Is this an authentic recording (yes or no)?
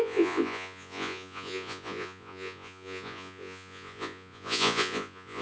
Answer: no